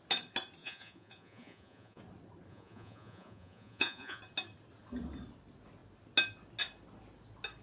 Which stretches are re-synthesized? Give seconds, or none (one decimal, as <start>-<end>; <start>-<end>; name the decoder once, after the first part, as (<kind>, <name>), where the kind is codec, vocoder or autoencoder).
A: 0.6-2.0 (vocoder, Vocos); 2.5-4.2